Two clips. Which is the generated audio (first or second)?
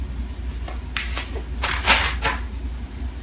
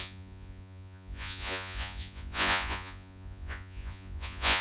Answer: second